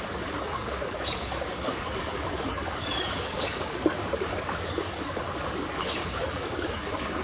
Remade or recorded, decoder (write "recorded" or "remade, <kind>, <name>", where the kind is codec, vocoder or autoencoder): remade, codec, DAC